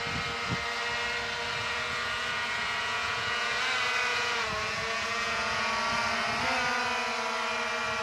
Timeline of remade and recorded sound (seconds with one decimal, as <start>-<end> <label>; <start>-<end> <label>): 0.0-1.6 recorded; 1.6-3.6 remade; 3.6-4.1 recorded; 4.1-5.7 remade; 5.7-8.0 recorded